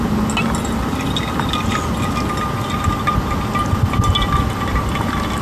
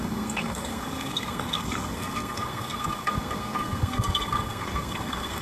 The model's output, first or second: second